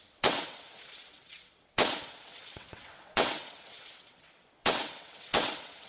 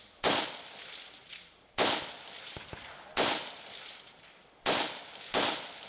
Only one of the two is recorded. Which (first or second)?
second